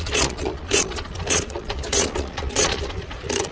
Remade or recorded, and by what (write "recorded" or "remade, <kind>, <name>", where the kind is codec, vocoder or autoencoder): remade, vocoder, Vocos